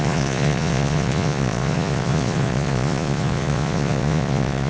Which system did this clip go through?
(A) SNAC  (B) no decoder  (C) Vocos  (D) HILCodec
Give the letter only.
C